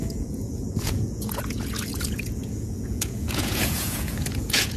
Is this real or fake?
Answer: fake